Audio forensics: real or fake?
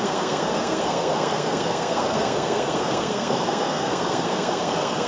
fake